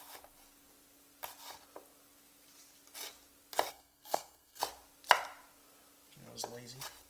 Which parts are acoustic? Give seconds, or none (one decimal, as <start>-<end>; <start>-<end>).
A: 0.0-3.7; 4.6-7.1